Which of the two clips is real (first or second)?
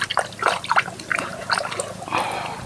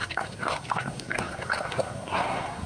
first